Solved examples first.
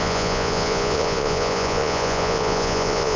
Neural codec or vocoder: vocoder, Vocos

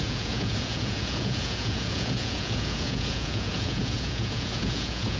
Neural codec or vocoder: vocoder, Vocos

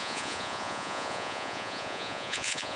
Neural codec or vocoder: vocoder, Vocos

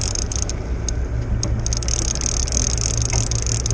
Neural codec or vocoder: none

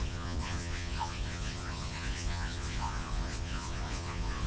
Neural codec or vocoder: vocoder, Vocos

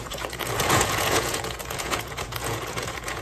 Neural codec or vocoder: vocoder, Vocos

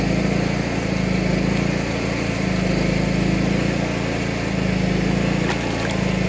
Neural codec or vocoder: none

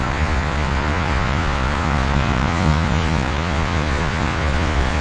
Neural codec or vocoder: vocoder, Vocos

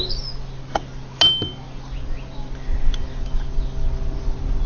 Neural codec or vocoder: none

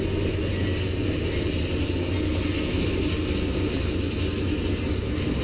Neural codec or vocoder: none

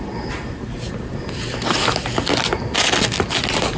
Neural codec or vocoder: none